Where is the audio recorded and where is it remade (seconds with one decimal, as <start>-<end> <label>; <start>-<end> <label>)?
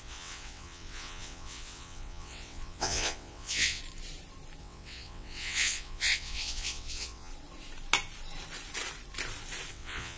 0.0-3.8 remade; 3.8-4.6 recorded; 4.6-7.3 remade; 7.3-9.7 recorded; 9.7-10.2 remade